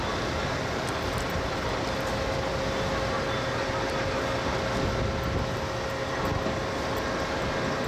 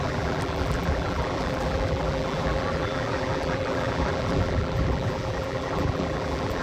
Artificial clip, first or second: second